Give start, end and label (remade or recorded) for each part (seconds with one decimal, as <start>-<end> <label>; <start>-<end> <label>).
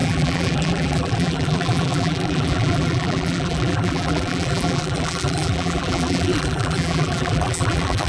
0.0-8.1 remade